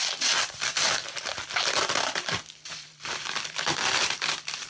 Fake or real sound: fake